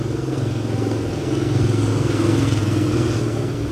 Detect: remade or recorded remade